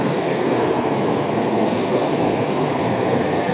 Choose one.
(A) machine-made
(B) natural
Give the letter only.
A